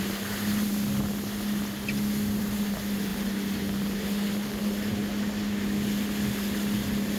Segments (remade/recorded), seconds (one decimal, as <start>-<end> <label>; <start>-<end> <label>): 0.0-7.2 recorded